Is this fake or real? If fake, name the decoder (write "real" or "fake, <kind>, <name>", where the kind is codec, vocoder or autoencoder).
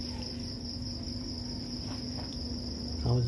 fake, vocoder, BigVGAN v2